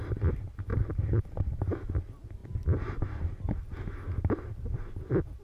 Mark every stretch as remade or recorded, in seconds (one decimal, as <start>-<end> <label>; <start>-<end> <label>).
0.0-0.7 recorded; 0.7-1.2 remade; 1.2-5.4 recorded